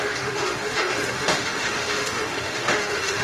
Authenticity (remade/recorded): remade